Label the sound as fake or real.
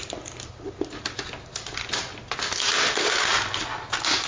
real